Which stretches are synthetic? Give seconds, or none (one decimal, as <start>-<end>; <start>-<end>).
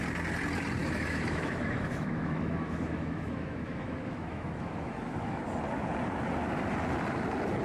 0.8-5.4